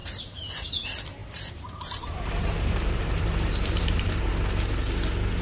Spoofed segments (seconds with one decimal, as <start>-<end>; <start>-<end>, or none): 0.0-0.7; 1.2-4.3